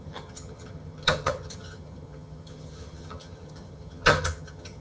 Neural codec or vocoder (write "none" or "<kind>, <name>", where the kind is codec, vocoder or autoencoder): vocoder, HiFi-GAN